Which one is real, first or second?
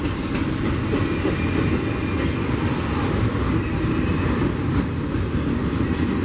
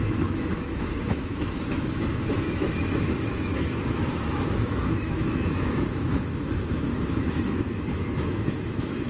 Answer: first